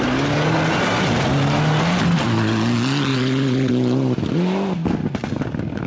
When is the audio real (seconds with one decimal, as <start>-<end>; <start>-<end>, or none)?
0.0-3.1; 3.7-5.9

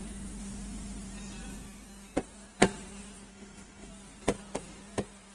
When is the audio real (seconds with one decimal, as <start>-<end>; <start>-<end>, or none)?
0.0-3.3; 3.9-5.3

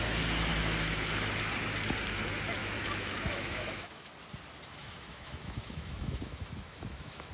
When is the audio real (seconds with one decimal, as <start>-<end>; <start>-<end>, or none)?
0.0-2.6; 4.1-4.8